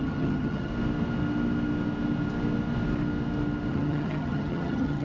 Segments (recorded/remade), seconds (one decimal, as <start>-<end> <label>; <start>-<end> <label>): 0.0-0.7 remade; 0.7-3.7 recorded; 3.7-5.0 remade